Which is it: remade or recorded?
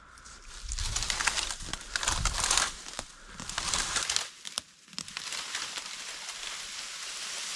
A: recorded